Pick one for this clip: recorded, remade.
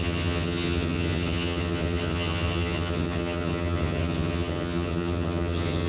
remade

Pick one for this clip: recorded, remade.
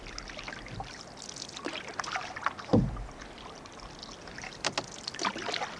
recorded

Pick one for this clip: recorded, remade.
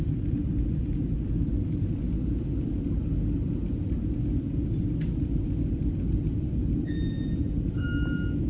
recorded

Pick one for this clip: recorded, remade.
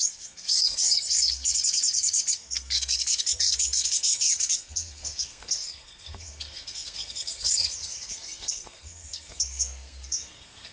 remade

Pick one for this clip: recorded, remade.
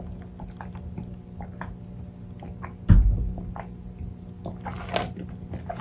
recorded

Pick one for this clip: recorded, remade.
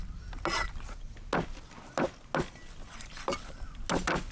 recorded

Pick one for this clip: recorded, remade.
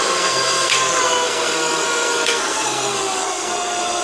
remade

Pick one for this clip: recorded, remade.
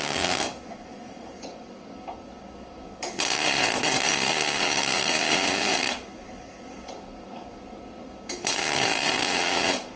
remade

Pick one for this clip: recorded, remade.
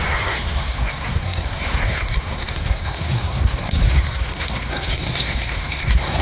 remade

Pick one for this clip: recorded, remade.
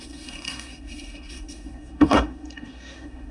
remade